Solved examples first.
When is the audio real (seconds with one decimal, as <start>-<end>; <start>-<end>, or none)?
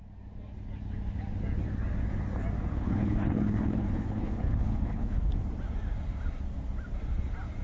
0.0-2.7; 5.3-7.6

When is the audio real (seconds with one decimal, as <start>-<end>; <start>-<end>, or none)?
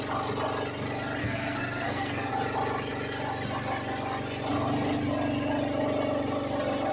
0.0-1.2; 2.3-6.9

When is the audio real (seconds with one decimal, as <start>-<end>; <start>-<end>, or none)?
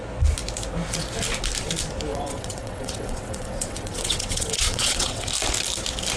0.0-2.1; 5.3-6.2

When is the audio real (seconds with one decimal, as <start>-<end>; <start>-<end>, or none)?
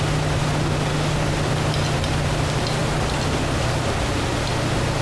0.0-5.0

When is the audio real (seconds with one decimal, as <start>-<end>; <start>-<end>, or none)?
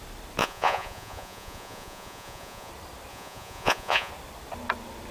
0.0-0.4; 2.7-3.1; 4.1-5.1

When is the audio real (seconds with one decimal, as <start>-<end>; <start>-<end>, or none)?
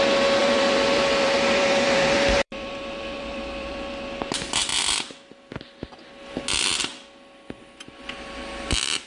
0.0-0.4; 3.9-9.1